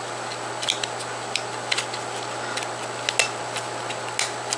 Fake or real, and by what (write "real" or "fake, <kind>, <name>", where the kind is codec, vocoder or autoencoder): real